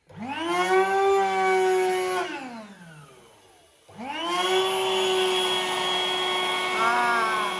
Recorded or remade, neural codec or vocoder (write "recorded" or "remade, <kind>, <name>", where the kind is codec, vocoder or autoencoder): recorded